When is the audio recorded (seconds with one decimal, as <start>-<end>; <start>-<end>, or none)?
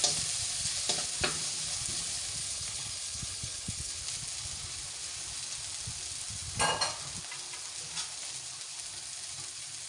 0.0-2.4; 4.0-9.9